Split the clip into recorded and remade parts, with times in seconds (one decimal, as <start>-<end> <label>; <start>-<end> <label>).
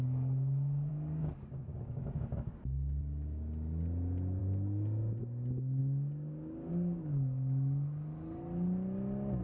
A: 0.0-0.9 recorded; 0.9-2.6 remade; 2.6-4.4 recorded; 4.4-5.2 remade; 5.2-5.8 recorded; 5.8-6.7 remade; 6.7-9.4 recorded